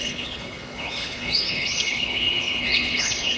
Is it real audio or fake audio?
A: fake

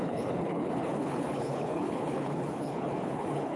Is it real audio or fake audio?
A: fake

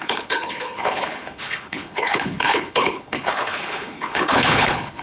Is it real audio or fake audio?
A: fake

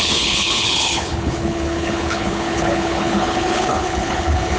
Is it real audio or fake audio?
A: fake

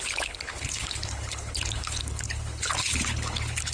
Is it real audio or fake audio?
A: fake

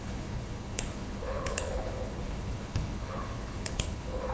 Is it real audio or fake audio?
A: fake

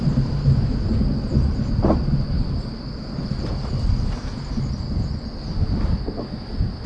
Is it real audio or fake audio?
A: real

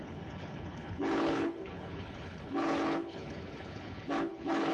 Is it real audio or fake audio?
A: fake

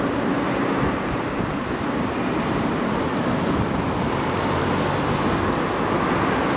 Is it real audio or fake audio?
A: real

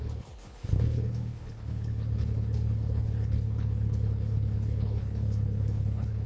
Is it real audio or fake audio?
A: fake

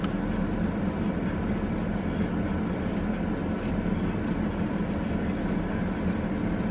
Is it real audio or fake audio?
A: real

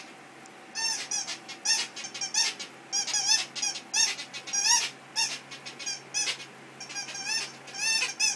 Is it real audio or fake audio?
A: real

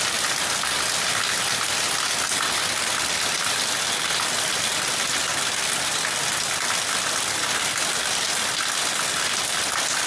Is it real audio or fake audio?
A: real